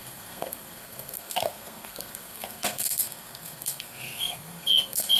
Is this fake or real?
fake